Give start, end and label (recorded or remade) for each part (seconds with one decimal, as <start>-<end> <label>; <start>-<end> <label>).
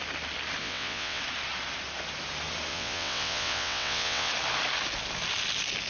0.0-0.6 recorded; 0.6-1.2 remade; 1.2-2.7 recorded; 2.7-4.3 remade; 4.3-5.9 recorded